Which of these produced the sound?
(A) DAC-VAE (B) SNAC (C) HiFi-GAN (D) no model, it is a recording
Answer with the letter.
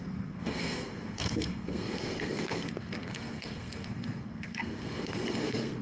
B